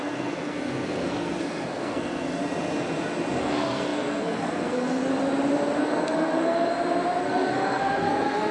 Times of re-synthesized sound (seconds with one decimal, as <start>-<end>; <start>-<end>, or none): 0.0-2.4; 3.4-5.1; 5.8-6.7; 7.2-8.5